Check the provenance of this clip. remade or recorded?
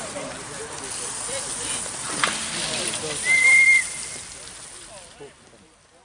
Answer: recorded